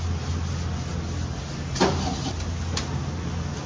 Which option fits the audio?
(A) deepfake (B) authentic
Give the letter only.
B